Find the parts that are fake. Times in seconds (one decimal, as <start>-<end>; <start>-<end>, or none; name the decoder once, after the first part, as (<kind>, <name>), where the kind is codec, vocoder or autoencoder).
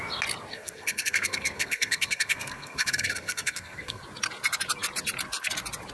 0.5-4.0 (codec, SNAC)